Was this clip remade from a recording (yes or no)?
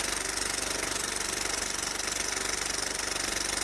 no